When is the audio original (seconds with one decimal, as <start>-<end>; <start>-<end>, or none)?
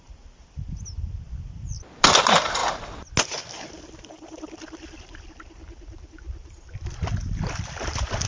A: 0.0-8.3